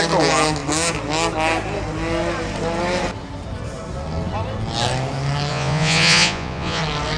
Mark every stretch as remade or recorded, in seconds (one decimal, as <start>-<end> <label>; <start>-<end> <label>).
0.0-5.5 recorded; 5.5-6.8 remade; 6.8-7.2 recorded